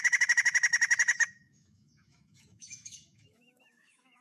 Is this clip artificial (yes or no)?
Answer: yes